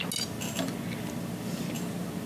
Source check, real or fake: real